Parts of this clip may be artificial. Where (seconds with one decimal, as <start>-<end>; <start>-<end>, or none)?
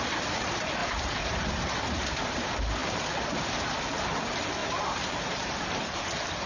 0.8-2.1; 4.6-6.0